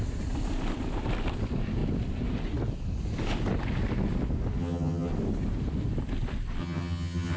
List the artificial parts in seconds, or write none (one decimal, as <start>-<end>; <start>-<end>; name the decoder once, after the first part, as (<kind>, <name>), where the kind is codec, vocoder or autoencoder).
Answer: 4.6-5.1 (vocoder, HiFi-GAN); 6.6-7.4

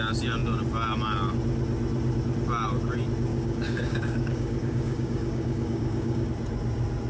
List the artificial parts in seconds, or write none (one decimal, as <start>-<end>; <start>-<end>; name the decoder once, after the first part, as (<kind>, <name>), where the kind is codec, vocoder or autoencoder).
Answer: 3.3-6.3 (codec, DAC)

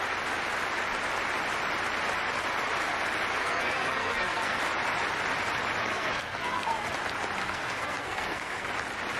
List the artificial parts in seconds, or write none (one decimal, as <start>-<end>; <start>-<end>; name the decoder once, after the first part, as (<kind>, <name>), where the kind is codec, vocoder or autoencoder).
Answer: 3.4-4.6 (codec, SNAC); 5.8-6.9; 7.4-8.7

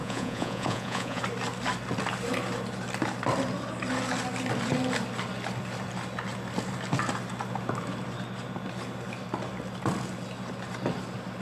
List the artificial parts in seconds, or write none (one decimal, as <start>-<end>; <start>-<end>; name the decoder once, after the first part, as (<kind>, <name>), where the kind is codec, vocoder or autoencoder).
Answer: 0.0-1.2 (vocoder, Vocos)

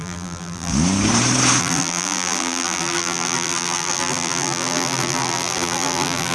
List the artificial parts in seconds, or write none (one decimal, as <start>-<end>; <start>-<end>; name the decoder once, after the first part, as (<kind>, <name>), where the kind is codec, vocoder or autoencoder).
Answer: 0.0-0.7 (vocoder, BigVGAN v2); 1.6-6.3

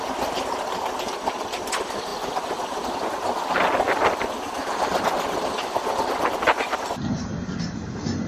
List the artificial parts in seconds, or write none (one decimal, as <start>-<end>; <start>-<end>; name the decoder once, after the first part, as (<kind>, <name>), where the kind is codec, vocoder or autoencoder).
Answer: none